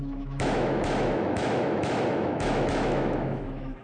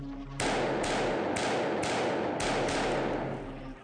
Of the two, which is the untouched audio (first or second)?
second